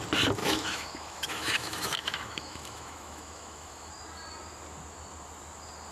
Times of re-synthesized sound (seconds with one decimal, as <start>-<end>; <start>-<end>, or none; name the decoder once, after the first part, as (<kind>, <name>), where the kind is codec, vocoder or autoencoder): 0.4-3.9 (autoencoder, DAC-VAE)